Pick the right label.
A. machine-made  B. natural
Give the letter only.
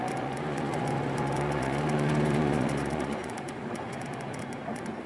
A